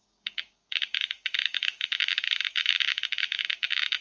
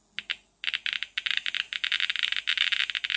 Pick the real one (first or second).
second